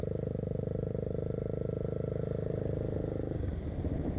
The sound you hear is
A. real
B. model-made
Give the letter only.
A